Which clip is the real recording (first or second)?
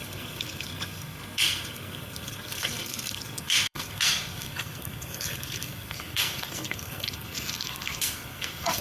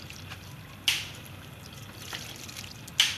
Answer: second